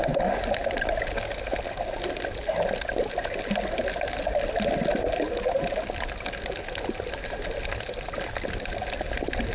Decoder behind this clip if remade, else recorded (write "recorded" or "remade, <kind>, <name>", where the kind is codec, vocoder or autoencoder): recorded